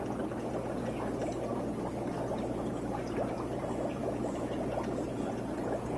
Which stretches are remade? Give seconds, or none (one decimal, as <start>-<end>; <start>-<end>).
4.0-4.6